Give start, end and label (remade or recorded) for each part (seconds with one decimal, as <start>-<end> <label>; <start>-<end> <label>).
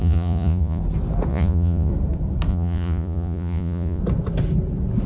0.0-0.8 remade; 0.8-1.3 recorded; 1.3-1.9 remade; 1.9-2.5 recorded; 2.5-4.0 remade; 4.0-5.1 recorded